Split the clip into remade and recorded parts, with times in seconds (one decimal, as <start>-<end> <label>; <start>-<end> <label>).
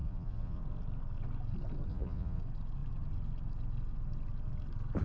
0.0-0.6 remade; 0.6-1.9 recorded; 1.9-2.4 remade; 2.4-5.0 recorded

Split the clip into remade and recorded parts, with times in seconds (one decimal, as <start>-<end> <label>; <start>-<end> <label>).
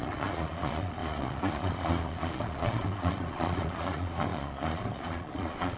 0.0-5.8 remade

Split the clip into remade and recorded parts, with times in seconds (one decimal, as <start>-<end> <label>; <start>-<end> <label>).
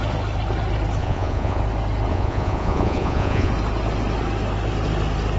0.0-1.0 recorded; 1.0-1.6 remade; 1.6-2.1 recorded; 2.1-3.5 remade; 3.5-5.4 recorded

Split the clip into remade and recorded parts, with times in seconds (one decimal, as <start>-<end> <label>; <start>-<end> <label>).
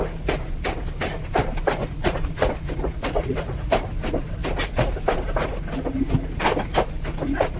0.0-1.8 recorded; 1.8-3.8 remade; 3.8-7.6 recorded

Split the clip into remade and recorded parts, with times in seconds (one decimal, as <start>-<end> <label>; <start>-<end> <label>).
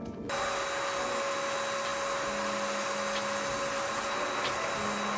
0.0-5.2 recorded